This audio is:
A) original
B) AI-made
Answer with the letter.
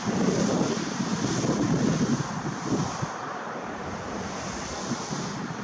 A